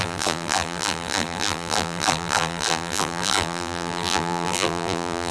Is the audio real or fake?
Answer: fake